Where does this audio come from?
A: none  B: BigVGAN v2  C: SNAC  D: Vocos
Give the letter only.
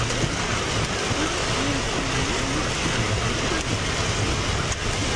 A